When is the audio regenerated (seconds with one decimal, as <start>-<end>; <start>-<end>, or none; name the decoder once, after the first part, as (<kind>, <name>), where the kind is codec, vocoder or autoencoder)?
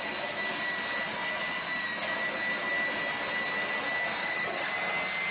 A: 4.2-4.7 (vocoder, HiFi-GAN)